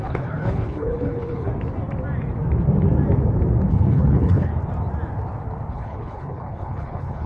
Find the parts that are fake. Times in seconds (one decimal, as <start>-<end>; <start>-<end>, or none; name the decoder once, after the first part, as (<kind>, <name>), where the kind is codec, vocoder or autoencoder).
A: 0.0-1.5 (codec, HILCodec); 3.7-4.5; 5.7-7.3